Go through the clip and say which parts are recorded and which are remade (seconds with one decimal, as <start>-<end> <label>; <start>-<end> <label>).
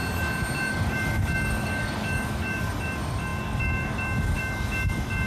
0.0-0.7 recorded; 0.7-5.3 remade